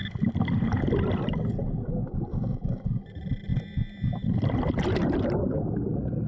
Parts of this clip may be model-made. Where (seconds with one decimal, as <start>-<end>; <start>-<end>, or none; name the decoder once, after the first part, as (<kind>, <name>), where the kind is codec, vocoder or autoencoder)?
0.0-1.1 (vocoder, BigVGAN v2); 3.5-6.3